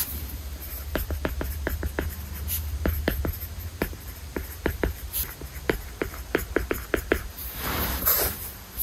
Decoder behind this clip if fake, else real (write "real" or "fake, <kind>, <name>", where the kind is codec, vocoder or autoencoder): fake, vocoder, BigVGAN v2